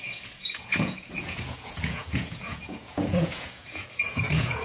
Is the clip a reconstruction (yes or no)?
yes